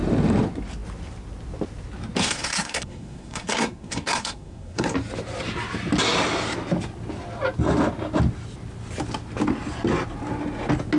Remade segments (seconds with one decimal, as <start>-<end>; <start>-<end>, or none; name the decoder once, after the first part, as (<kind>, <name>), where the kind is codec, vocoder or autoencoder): 2.2-4.9 (codec, SNAC)